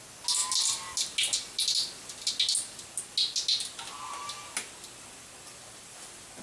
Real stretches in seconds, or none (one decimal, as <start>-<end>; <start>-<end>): 0.0-6.4